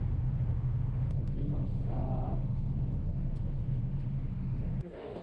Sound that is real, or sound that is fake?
fake